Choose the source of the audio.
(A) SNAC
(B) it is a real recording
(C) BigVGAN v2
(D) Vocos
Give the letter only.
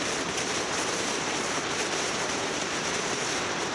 C